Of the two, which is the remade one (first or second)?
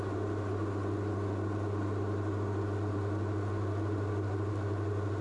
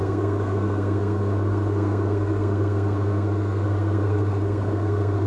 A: second